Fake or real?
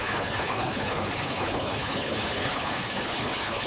fake